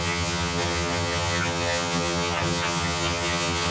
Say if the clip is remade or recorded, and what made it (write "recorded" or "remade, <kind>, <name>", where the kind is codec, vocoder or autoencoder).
remade, vocoder, HiFi-GAN